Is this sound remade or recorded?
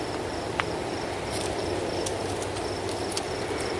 recorded